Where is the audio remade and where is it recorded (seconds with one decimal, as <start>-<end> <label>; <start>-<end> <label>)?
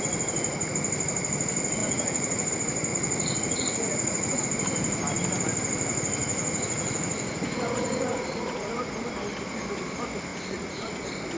0.0-1.8 recorded; 1.8-2.5 remade; 2.5-2.9 recorded; 2.9-4.4 remade; 4.4-6.2 recorded; 6.2-8.9 remade; 8.9-10.3 recorded; 10.3-10.9 remade; 10.9-11.4 recorded